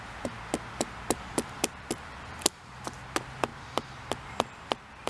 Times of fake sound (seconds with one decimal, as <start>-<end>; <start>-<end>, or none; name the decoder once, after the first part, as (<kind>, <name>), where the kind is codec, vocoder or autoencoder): none